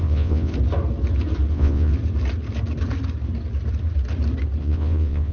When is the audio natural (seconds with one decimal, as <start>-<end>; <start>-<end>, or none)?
0.5-1.5; 1.9-4.6